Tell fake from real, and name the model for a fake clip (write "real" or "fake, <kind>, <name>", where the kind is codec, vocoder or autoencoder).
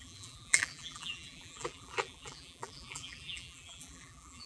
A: fake, vocoder, BigVGAN v2